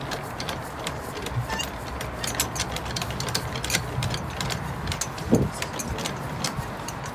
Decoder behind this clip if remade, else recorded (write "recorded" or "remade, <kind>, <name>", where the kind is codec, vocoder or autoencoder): recorded